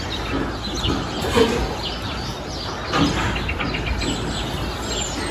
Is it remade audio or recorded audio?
recorded